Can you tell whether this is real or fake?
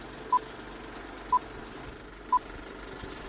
real